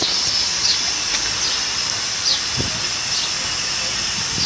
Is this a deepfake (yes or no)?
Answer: no